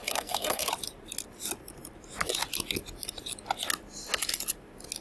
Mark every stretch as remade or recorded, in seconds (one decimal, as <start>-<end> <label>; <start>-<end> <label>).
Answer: 0.0-0.7 remade; 0.7-5.0 recorded